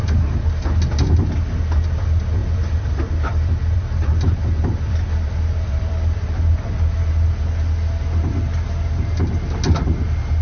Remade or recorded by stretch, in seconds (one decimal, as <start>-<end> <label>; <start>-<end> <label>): 0.0-2.4 recorded; 2.4-7.0 remade; 7.0-10.4 recorded